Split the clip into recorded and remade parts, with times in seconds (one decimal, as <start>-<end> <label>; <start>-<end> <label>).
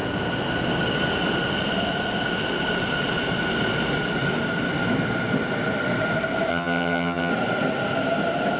0.0-6.5 recorded; 6.5-7.3 remade; 7.3-8.6 recorded